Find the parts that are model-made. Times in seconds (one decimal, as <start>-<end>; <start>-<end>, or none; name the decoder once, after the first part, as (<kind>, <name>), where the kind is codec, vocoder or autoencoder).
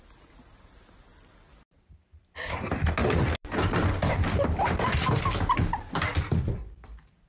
none